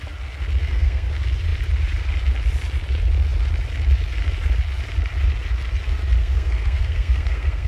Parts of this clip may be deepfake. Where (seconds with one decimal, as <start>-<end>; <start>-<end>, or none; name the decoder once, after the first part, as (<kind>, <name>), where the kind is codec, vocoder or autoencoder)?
0.6-1.1 (codec, SNAC); 6.2-7.7